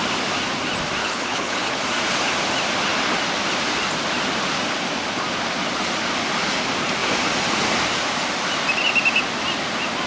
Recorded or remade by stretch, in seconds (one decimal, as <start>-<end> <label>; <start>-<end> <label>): 0.0-1.0 recorded; 1.0-1.8 remade; 1.8-10.1 recorded